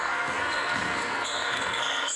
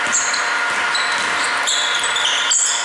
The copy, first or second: first